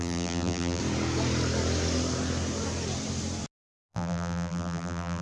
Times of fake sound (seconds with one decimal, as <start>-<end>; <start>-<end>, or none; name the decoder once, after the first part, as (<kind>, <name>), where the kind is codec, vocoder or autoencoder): 0.0-0.8 (vocoder, BigVGAN v2); 3.9-5.2

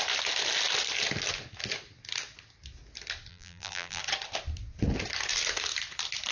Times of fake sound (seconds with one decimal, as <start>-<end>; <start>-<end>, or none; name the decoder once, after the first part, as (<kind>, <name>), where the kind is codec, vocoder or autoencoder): 3.3-4.0 (vocoder, BigVGAN v2)

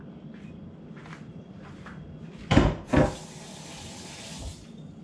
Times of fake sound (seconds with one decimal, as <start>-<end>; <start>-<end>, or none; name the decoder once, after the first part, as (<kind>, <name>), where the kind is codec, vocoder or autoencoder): 1.0-3.0 (vocoder, BigVGAN v2)

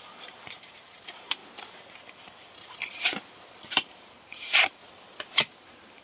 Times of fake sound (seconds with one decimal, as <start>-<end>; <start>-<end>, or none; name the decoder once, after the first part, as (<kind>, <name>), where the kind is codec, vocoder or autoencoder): 0.0-1.4 (vocoder, BigVGAN v2); 3.7-4.8; 5.4-6.0

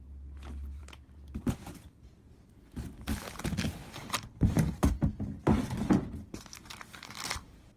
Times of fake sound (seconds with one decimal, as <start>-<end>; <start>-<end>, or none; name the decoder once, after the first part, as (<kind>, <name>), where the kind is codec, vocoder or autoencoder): none

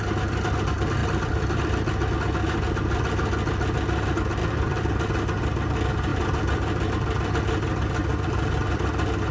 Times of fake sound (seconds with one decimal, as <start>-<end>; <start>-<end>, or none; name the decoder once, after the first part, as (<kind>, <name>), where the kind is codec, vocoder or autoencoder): 1.0-2.1 (vocoder, BigVGAN v2); 4.4-4.9; 6.1-6.9; 8.1-9.3

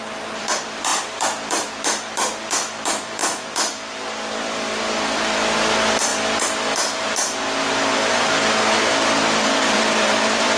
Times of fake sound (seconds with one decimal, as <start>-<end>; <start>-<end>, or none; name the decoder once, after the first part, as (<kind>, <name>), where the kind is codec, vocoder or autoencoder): 0.0-10.6 (vocoder, BigVGAN v2)

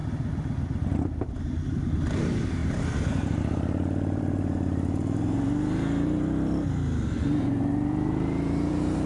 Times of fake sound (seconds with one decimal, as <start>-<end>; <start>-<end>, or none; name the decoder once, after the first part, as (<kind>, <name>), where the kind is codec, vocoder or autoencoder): 1.2-9.1 (vocoder, BigVGAN v2)